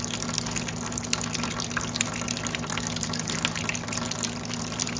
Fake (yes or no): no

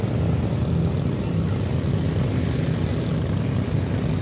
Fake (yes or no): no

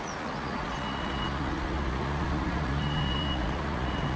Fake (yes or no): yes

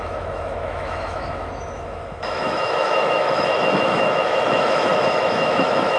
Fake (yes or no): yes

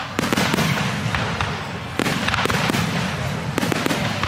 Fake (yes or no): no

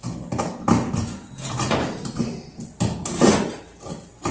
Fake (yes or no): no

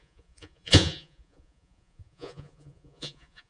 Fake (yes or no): yes